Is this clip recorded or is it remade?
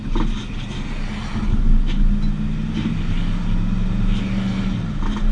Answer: recorded